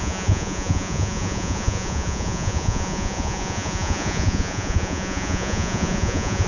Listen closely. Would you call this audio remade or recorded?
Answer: remade